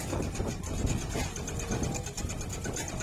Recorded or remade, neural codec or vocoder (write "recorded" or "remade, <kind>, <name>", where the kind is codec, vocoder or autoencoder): recorded